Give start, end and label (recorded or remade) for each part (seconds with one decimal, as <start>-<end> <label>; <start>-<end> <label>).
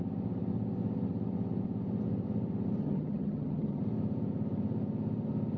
0.0-2.8 recorded; 2.8-3.8 remade; 3.8-5.6 recorded